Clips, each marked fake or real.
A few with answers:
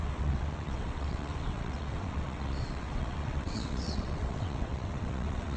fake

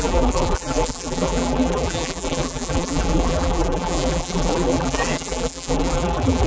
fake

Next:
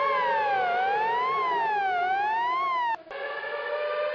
real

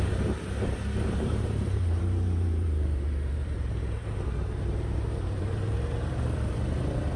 fake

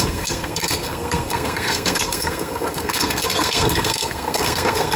fake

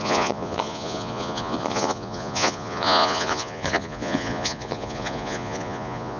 fake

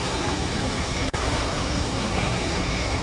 fake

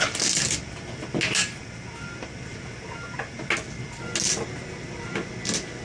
real